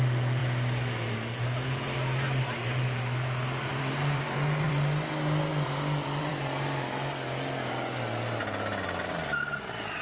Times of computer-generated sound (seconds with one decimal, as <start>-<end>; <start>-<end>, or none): 3.7-4.7; 5.5-6.3